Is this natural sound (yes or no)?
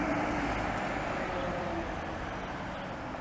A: yes